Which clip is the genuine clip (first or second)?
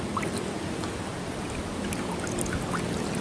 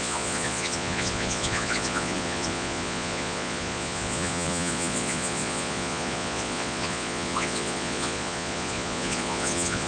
first